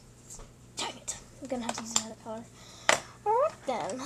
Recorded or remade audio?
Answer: remade